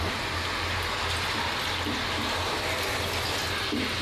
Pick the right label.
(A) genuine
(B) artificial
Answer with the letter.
A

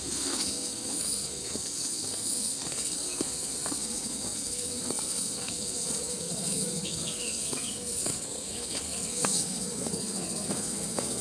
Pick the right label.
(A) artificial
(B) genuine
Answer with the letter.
A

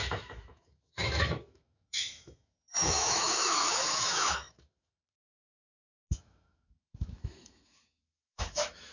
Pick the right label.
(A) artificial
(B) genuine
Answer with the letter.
A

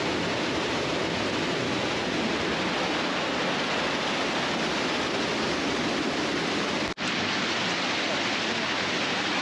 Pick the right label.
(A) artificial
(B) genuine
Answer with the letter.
B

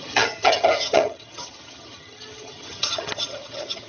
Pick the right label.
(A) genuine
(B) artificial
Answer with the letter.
B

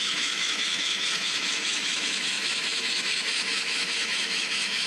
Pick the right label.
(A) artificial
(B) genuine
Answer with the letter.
A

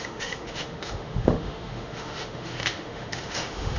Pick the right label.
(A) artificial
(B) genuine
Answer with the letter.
A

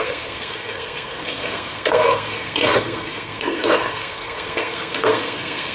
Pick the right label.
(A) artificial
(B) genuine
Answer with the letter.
A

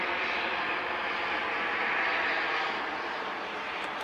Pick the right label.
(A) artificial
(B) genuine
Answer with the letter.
B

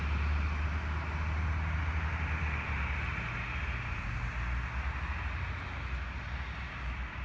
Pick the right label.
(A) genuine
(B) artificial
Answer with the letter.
A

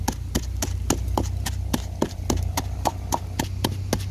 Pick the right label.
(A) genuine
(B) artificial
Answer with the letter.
A